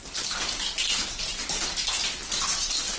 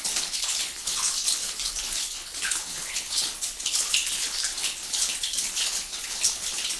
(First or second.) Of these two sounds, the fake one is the second